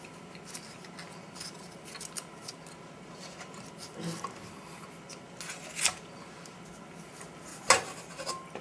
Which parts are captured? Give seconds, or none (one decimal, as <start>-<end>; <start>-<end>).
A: 0.0-8.6